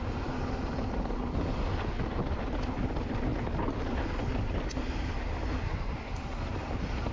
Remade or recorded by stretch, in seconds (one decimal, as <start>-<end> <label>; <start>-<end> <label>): 0.0-7.1 recorded